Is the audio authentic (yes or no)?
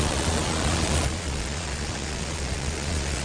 no